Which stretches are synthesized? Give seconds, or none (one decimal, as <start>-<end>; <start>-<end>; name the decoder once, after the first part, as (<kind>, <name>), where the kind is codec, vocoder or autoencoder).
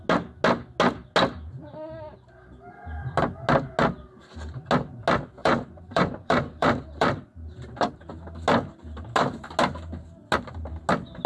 5.4-8.1 (vocoder, BigVGAN v2)